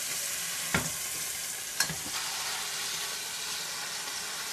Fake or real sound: real